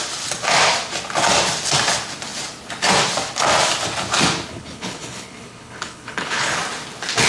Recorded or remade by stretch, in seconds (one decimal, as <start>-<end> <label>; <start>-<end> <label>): 0.0-4.5 recorded; 4.5-6.6 remade; 6.6-7.3 recorded